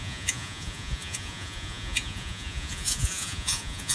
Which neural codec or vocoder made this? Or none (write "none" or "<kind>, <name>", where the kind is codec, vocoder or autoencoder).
vocoder, Vocos